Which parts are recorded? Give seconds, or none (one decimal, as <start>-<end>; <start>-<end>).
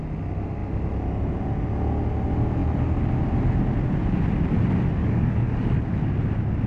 0.0-5.0; 5.8-6.7